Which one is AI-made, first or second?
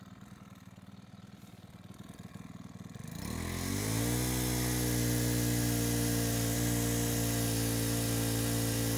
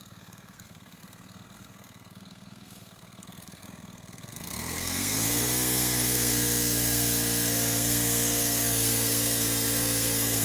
second